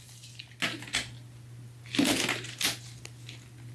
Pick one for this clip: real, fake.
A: real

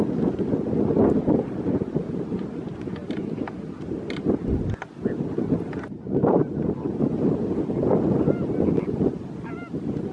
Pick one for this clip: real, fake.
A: real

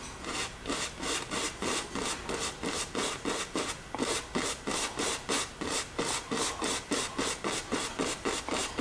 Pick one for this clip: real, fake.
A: real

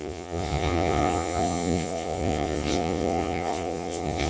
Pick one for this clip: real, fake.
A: fake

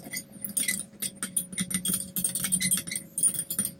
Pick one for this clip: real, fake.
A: real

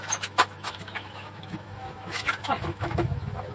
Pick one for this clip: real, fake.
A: fake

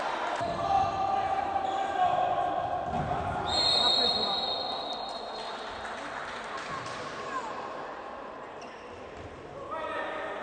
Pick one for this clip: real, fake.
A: real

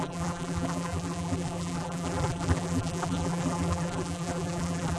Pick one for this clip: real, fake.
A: fake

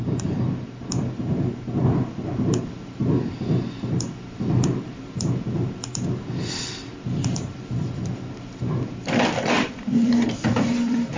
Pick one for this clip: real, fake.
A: fake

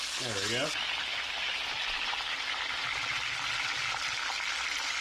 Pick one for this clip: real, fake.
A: real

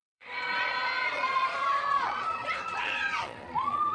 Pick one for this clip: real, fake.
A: fake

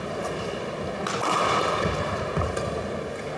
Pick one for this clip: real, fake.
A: real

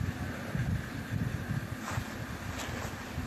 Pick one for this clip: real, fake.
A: real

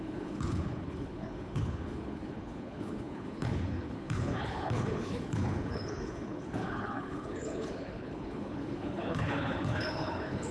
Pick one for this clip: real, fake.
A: fake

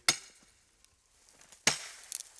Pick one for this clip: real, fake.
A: real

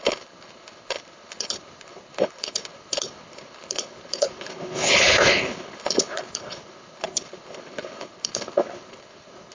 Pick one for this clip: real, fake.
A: fake